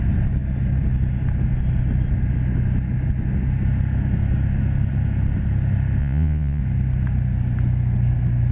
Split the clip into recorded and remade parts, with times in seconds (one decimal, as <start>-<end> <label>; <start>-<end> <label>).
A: 0.0-6.0 recorded; 6.0-6.6 remade; 6.6-8.5 recorded